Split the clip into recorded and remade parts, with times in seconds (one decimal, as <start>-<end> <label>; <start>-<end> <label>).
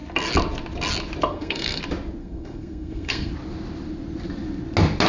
0.0-1.3 recorded; 1.3-1.8 remade; 1.8-2.2 recorded; 2.2-3.3 remade; 3.3-5.1 recorded